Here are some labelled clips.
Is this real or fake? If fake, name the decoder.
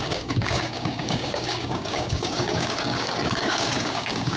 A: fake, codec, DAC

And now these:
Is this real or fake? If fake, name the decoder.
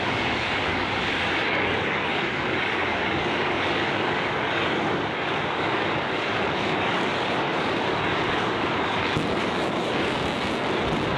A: fake, codec, DAC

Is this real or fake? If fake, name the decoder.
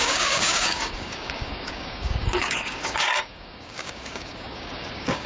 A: fake, codec, DAC